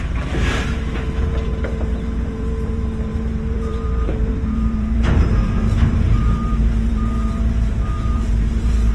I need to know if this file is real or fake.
fake